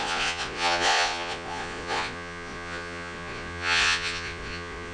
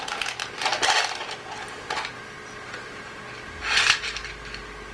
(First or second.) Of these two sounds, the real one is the second